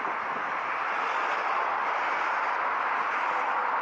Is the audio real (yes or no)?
yes